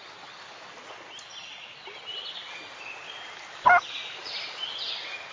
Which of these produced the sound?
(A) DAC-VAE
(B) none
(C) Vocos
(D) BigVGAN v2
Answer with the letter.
B